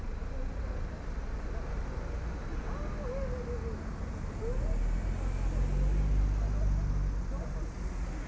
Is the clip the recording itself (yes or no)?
yes